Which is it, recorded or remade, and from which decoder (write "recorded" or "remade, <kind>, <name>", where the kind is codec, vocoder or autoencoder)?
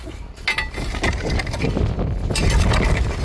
recorded